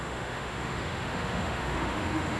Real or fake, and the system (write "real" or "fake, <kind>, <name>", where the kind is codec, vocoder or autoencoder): fake, autoencoder, DAC-VAE